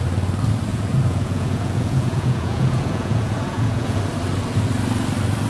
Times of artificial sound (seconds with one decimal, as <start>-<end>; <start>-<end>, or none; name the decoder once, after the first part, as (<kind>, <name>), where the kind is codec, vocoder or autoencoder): 0.7-4.0 (vocoder, Vocos)